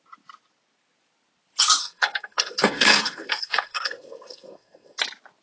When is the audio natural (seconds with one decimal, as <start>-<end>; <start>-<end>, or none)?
0.0-1.8; 5.0-5.4